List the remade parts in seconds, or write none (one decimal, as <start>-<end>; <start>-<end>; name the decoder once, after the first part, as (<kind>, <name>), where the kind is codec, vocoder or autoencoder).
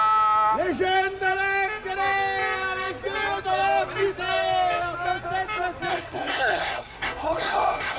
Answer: 5.9-8.0 (codec, SNAC)